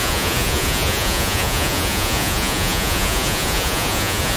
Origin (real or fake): fake